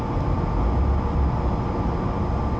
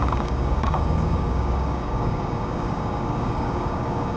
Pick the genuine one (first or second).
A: first